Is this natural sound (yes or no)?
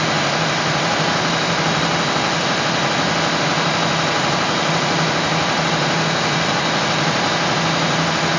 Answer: yes